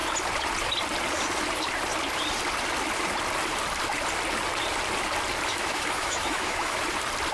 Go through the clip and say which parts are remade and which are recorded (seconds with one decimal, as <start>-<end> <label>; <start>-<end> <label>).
0.0-5.5 recorded; 5.5-6.8 remade; 6.8-7.3 recorded